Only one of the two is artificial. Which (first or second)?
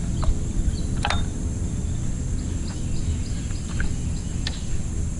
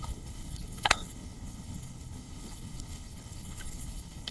second